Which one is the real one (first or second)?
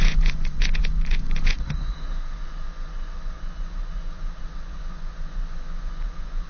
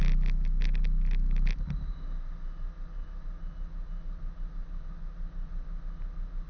second